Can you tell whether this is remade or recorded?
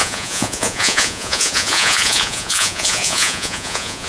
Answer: remade